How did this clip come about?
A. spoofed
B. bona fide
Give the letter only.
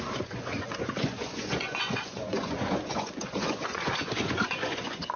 A